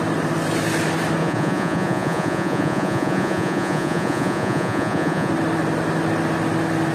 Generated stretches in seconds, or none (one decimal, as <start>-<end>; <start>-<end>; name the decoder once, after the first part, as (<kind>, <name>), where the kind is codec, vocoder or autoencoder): 1.2-5.3 (vocoder, Vocos)